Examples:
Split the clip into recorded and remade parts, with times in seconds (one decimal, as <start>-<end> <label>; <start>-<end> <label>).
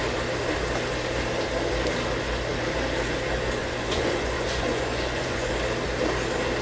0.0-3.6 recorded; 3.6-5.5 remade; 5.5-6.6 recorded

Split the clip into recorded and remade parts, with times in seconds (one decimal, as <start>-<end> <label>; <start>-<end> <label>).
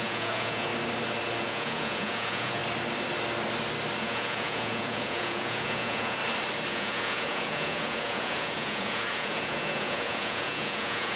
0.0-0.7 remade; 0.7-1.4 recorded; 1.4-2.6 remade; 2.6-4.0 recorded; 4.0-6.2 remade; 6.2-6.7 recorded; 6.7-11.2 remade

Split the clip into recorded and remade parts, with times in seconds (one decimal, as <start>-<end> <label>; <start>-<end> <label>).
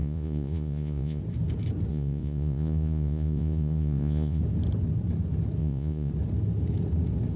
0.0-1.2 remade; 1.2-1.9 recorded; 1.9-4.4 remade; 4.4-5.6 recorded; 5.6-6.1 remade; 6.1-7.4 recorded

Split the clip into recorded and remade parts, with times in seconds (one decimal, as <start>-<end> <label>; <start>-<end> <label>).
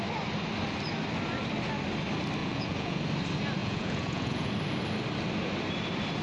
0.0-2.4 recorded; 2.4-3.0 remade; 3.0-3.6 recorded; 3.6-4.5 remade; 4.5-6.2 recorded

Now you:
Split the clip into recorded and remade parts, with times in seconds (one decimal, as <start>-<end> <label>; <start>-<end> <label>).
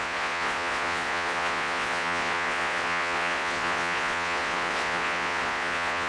0.0-6.1 remade